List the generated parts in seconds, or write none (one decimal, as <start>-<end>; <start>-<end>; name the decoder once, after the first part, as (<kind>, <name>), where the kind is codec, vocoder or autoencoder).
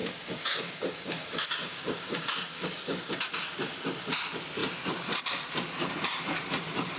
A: 0.0-3.1 (codec, DAC)